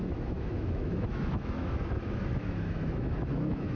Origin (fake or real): fake